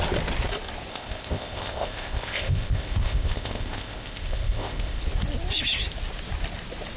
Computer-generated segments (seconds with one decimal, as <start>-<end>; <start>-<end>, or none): 0.9-5.0